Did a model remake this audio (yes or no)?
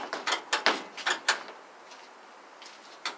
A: no